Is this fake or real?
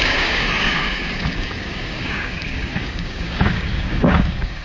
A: fake